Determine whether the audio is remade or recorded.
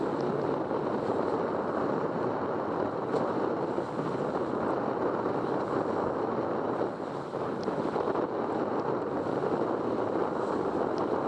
recorded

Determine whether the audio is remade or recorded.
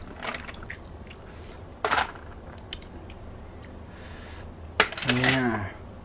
recorded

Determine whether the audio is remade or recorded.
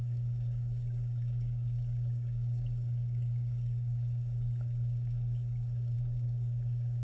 remade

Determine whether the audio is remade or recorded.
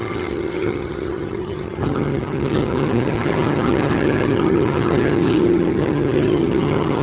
remade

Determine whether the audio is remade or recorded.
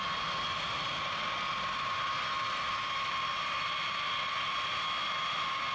recorded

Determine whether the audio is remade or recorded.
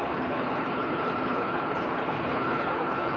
remade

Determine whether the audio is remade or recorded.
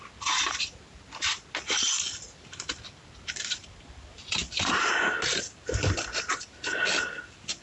recorded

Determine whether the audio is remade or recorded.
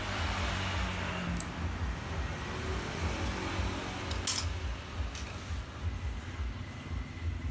recorded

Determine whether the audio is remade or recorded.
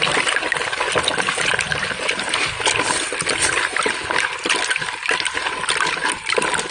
recorded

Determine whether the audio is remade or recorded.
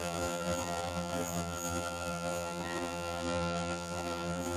remade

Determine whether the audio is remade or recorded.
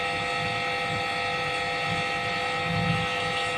recorded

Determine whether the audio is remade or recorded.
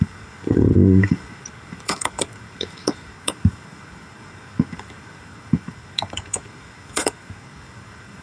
remade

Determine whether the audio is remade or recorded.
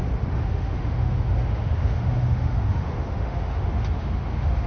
remade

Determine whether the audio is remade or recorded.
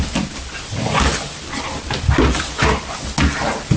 recorded